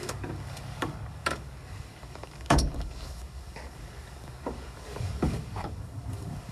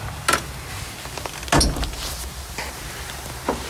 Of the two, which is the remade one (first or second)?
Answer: first